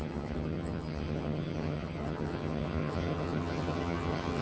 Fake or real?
fake